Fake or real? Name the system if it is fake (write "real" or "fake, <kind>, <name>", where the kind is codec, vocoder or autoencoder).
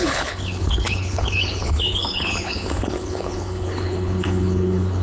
fake, codec, HILCodec